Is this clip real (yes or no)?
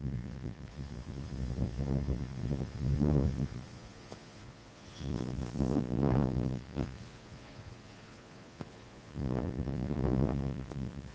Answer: no